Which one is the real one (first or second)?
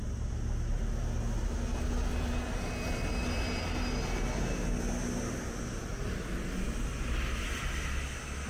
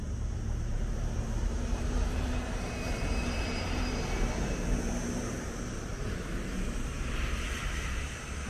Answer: first